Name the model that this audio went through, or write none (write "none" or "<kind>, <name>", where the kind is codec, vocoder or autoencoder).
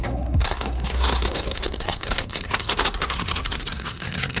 codec, SNAC